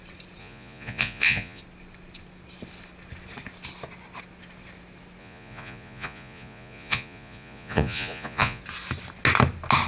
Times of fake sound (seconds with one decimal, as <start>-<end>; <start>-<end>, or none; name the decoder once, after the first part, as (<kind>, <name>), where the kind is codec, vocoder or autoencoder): 0.4-1.6 (vocoder, Vocos); 5.2-8.6